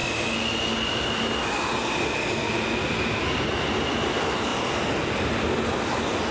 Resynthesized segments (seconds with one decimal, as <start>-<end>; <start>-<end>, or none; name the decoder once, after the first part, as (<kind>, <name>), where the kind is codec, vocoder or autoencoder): none